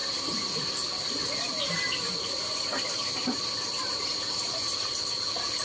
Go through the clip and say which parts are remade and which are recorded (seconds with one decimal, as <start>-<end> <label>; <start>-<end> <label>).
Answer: 0.0-0.6 remade; 0.6-1.6 recorded; 1.6-5.0 remade; 5.0-5.6 recorded